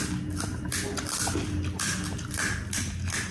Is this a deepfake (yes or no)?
no